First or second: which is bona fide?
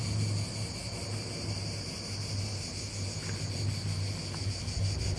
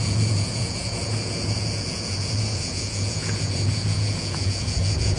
first